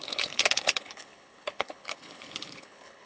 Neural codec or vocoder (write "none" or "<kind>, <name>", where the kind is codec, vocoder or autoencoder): codec, HILCodec